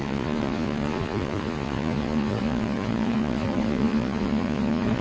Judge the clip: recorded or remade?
remade